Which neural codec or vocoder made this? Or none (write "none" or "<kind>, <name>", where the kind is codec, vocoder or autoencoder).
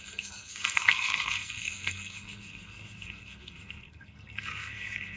codec, SNAC